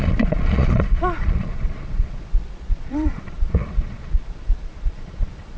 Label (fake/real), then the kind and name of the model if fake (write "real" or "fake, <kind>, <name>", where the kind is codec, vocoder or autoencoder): fake, vocoder, Vocos